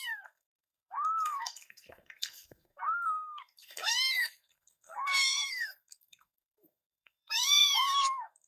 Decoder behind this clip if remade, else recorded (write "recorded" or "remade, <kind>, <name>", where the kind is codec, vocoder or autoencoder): remade, codec, SNAC